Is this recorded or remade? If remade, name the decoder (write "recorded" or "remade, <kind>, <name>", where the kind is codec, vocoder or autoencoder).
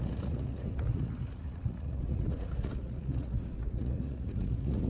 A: remade, vocoder, Vocos